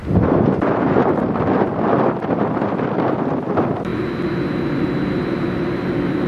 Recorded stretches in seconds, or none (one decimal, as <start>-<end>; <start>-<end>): 0.0-6.3